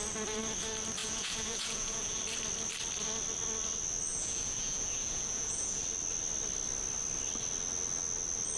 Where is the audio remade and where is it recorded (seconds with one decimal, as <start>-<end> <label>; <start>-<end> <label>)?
0.0-1.0 recorded; 1.0-2.2 remade; 2.2-4.1 recorded; 4.1-5.8 remade; 5.8-8.6 recorded